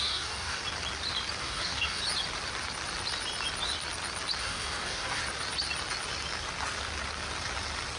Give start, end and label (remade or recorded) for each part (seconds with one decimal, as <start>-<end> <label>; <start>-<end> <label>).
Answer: 0.0-0.6 remade; 0.6-1.4 recorded; 1.4-2.0 remade; 2.0-4.4 recorded; 4.4-5.2 remade; 5.2-8.0 recorded

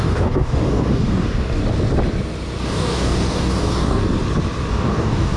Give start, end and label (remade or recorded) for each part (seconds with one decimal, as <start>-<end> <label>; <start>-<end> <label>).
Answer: 0.0-1.6 remade; 1.6-2.6 recorded; 2.6-4.0 remade; 4.0-4.7 recorded; 4.7-5.4 remade

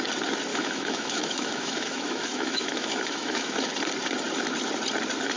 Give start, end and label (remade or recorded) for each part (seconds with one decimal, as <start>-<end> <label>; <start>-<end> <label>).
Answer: 0.0-0.5 recorded; 0.5-3.7 remade; 3.7-5.4 recorded

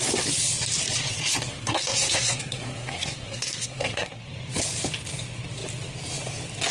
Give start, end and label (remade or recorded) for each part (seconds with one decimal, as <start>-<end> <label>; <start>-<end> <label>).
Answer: 0.0-1.5 recorded; 1.5-4.2 remade; 4.2-6.7 recorded

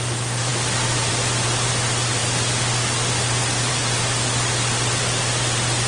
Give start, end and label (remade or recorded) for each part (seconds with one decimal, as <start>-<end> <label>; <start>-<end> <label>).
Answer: 0.0-5.9 recorded

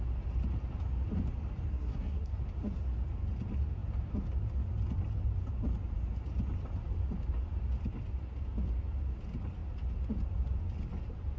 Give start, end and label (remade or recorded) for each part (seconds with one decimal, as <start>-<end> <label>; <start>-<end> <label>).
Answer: 0.0-1.7 recorded; 1.7-2.4 remade; 2.4-11.4 recorded

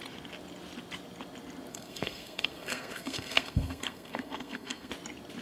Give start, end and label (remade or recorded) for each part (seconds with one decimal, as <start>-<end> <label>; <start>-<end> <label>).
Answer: 0.0-1.7 recorded; 1.7-4.9 remade; 4.9-5.4 recorded

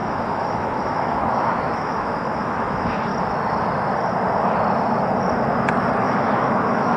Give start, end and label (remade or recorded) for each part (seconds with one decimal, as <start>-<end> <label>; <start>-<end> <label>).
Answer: 0.0-3.1 remade; 3.1-6.0 recorded; 6.0-7.0 remade